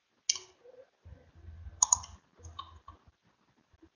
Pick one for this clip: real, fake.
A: real